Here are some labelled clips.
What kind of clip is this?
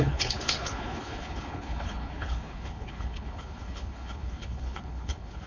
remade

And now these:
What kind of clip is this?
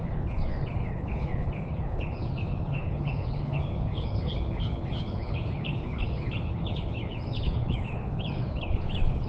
remade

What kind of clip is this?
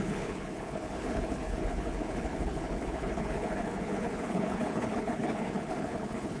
remade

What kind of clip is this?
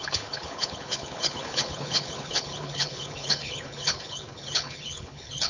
remade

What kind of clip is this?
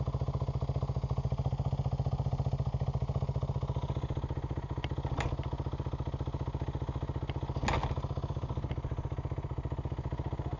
recorded